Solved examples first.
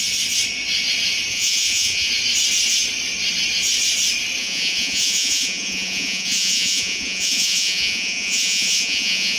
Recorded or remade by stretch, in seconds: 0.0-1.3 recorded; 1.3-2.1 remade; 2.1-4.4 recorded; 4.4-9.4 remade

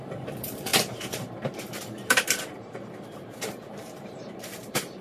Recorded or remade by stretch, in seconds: 0.0-5.0 remade

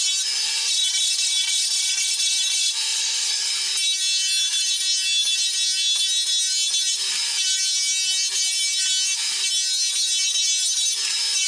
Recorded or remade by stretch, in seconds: 0.0-2.9 recorded; 2.9-3.5 remade; 3.5-11.5 recorded

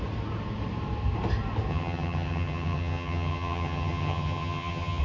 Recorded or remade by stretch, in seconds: 0.0-1.7 recorded; 1.7-5.0 remade